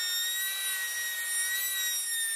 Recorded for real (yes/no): yes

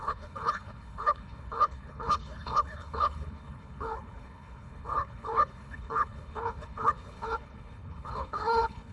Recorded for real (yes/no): no